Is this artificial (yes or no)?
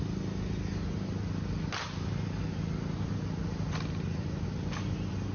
no